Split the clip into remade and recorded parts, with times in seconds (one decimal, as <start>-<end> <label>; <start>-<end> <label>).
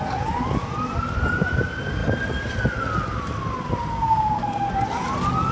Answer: 0.0-3.9 recorded; 3.9-4.7 remade; 4.7-5.5 recorded